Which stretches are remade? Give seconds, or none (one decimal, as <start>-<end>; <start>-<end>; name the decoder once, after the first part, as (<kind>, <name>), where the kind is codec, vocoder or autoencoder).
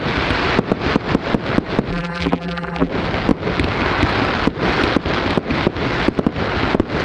1.9-2.9 (vocoder, BigVGAN v2)